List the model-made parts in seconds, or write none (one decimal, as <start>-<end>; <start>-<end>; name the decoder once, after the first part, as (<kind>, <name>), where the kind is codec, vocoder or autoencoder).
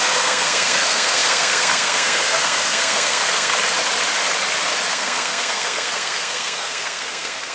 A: 0.0-3.5 (codec, SNAC); 4.9-7.5